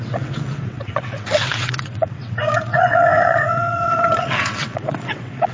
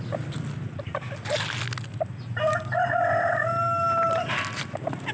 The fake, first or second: first